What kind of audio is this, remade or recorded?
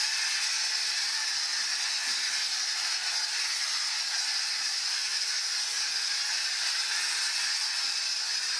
recorded